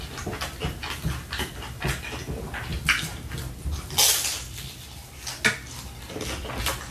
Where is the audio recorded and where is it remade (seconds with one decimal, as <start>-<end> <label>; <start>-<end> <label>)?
0.0-6.9 recorded